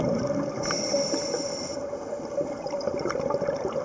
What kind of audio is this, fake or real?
real